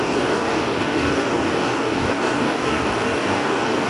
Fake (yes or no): yes